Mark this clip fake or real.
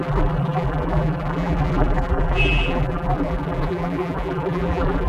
fake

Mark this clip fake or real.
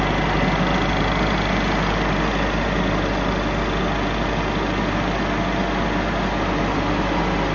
real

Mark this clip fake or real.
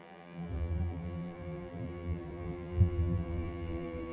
fake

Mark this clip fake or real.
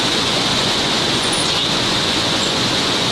fake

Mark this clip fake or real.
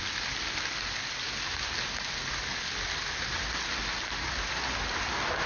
real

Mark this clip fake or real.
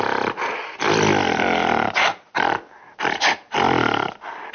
real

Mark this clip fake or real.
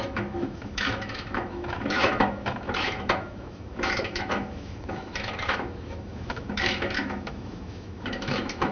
fake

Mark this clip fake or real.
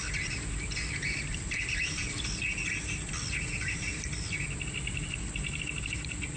fake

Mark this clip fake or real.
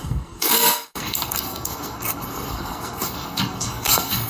fake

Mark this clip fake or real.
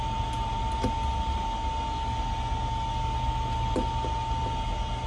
real